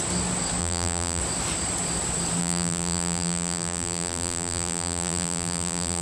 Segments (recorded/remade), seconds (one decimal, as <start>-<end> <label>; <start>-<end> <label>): 0.0-0.6 recorded; 0.6-1.2 remade; 1.2-2.4 recorded; 2.4-6.0 remade